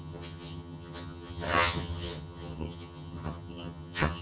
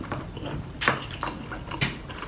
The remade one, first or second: first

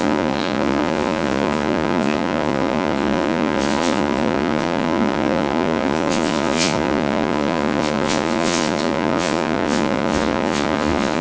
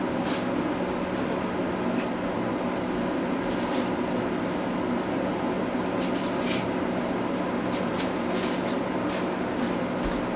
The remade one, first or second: first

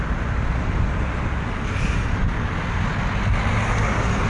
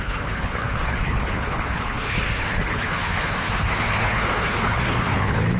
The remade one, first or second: second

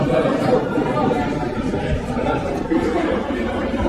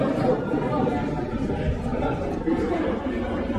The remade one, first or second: first